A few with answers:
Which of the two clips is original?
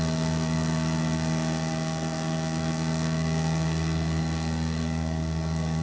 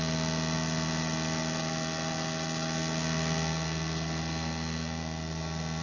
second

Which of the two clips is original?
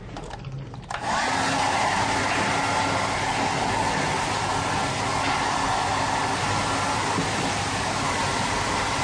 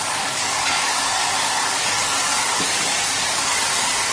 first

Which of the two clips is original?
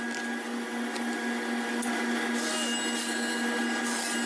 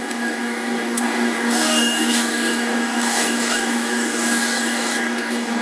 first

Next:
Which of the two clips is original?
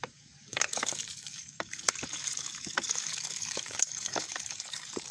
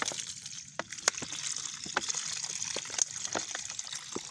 second